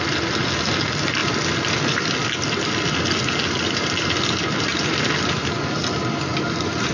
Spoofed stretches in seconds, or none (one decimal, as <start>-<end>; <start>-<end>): none

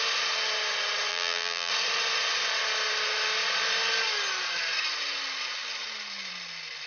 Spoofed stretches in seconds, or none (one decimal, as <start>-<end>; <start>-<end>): 1.1-1.7